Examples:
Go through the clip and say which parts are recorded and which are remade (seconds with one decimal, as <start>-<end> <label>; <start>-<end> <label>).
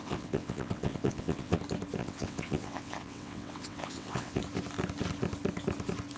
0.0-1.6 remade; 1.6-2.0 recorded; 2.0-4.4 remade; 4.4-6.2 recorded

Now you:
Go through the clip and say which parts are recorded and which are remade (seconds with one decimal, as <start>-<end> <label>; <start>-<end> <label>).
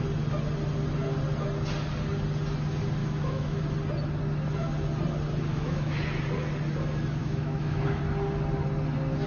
0.0-3.0 recorded; 3.0-3.6 remade; 3.6-5.5 recorded; 5.5-6.0 remade; 6.0-7.2 recorded; 7.2-8.0 remade; 8.0-9.3 recorded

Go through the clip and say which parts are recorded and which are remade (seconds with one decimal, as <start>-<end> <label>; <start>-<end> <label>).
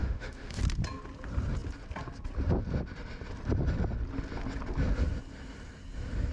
0.0-0.6 remade; 0.6-6.3 recorded